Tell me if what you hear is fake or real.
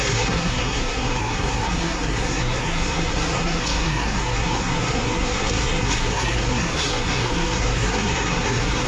fake